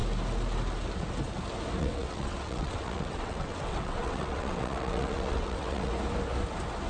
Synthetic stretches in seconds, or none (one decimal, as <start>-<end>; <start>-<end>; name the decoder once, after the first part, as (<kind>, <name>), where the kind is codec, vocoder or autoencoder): 1.8-5.9 (vocoder, WaveNeXt)